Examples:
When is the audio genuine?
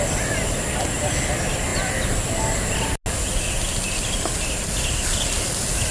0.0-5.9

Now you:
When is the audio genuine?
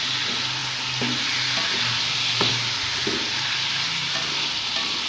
0.0-5.1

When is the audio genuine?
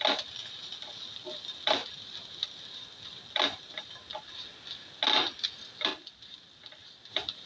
1.8-5.5; 5.9-7.1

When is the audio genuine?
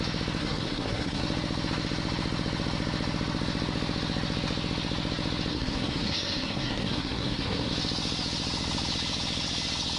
0.0-0.4; 1.2-5.5; 7.7-10.0